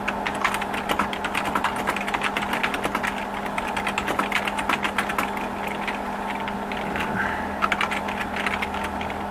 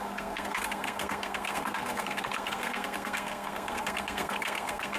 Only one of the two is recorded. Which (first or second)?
first